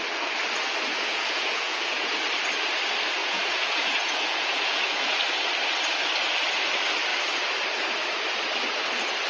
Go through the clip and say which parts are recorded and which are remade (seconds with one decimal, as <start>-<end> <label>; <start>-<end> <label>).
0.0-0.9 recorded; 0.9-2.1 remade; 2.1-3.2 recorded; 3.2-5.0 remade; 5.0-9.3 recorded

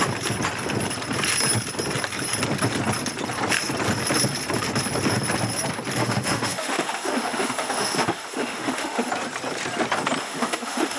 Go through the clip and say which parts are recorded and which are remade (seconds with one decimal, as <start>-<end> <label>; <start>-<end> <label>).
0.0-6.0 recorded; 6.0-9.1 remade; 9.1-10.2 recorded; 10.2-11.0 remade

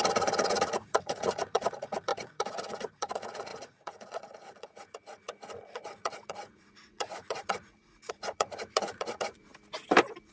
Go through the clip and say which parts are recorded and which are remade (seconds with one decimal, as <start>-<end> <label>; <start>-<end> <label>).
0.0-9.5 remade; 9.5-10.3 recorded

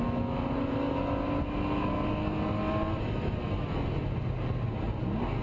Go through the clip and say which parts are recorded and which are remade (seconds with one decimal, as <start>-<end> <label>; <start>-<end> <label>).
0.0-5.4 recorded